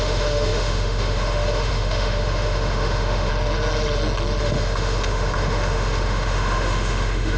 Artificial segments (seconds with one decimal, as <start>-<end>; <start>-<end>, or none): 0.0-3.3; 4.4-7.4